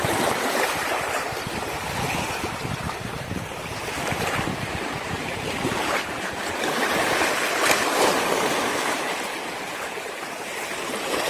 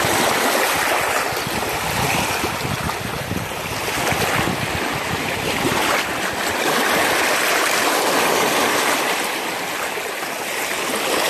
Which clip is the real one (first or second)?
second